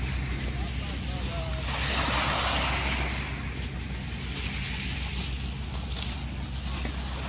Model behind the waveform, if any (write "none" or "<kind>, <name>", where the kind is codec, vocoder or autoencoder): none